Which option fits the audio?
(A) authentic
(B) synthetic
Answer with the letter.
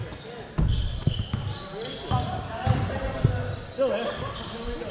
A